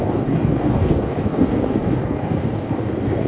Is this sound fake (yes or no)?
yes